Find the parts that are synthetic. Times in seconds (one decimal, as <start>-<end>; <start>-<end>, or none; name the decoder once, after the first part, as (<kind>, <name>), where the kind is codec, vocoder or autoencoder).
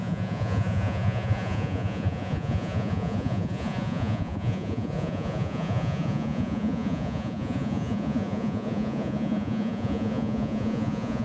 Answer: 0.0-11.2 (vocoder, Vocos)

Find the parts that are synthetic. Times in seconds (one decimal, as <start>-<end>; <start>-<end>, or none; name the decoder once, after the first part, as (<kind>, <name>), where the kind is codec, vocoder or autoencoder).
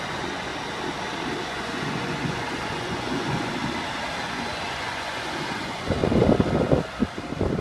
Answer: 0.0-0.5 (vocoder, Vocos); 1.4-3.6; 4.2-6.0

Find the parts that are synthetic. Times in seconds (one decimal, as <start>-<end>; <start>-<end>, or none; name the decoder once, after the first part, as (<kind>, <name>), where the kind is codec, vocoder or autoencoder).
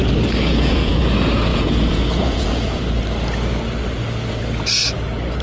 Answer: 0.5-1.0 (vocoder, Vocos); 1.5-2.8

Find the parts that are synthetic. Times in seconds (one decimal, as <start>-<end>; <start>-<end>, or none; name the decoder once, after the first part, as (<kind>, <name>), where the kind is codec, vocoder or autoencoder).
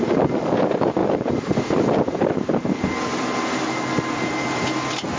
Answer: none